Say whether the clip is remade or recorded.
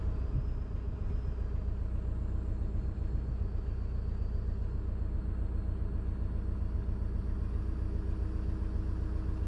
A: recorded